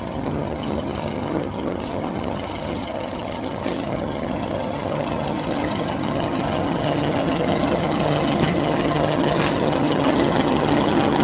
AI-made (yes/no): yes